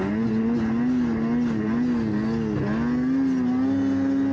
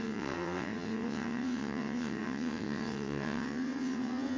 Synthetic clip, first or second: second